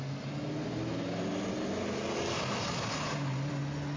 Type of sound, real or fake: real